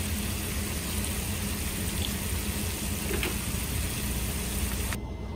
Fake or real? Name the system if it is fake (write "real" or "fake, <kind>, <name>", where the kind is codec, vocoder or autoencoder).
real